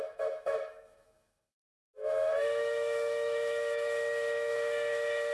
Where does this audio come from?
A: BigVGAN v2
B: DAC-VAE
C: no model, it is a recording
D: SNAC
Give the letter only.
B